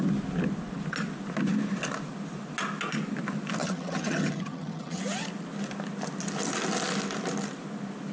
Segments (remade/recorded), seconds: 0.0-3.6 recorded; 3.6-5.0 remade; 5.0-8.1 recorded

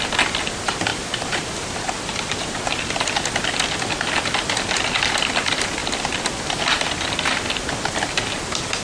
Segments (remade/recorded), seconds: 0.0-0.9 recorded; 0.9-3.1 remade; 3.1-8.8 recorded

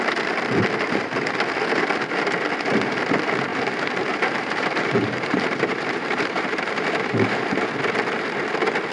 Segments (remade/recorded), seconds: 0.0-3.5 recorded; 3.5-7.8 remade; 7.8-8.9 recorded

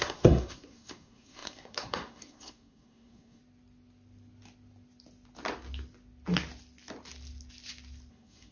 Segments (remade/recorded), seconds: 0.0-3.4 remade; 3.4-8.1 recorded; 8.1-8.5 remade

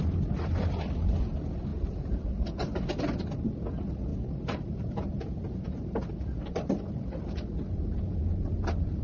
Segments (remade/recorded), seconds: 0.0-1.7 recorded; 1.7-2.6 remade; 2.6-4.1 recorded; 4.1-6.9 remade; 6.9-9.0 recorded